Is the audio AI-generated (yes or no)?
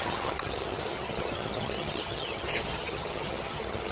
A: yes